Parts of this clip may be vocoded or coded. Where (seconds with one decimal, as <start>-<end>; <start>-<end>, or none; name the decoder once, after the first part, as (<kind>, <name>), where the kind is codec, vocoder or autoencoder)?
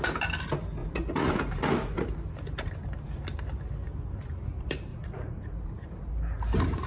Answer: 0.8-2.1 (vocoder, Vocos); 4.9-6.1